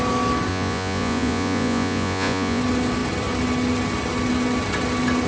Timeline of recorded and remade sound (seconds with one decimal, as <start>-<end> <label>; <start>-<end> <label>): 0.0-0.5 recorded; 0.5-2.6 remade; 2.6-5.3 recorded